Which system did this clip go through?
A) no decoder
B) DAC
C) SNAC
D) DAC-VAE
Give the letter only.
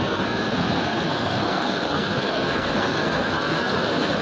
C